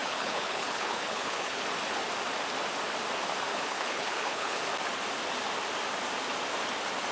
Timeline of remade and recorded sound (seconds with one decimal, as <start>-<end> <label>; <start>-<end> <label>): 0.0-1.6 remade; 1.6-3.5 recorded; 3.5-4.6 remade; 4.6-7.1 recorded